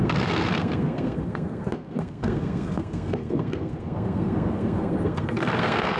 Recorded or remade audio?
remade